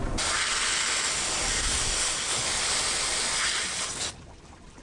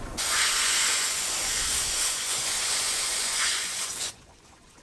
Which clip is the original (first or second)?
first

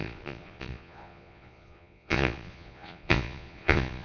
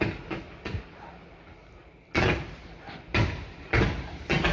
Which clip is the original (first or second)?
second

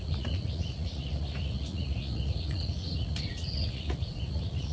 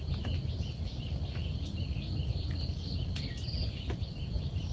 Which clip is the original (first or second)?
second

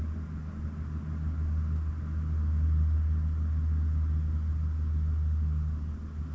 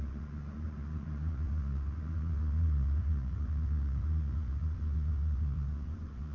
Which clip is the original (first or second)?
first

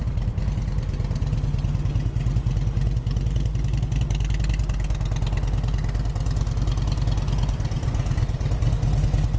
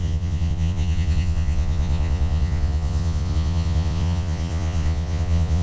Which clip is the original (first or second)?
first